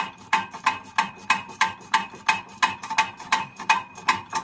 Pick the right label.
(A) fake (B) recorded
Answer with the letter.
A